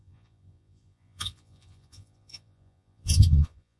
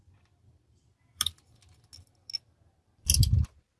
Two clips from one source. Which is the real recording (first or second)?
second